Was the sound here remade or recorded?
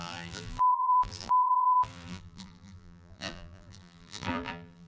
remade